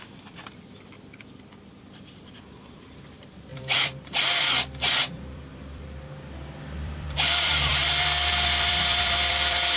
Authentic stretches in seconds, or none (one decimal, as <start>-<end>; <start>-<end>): none